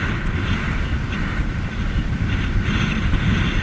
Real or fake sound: real